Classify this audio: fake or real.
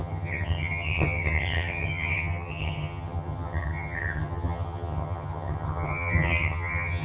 fake